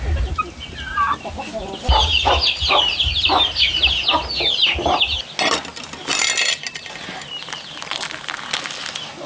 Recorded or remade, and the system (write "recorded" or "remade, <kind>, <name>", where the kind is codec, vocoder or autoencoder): recorded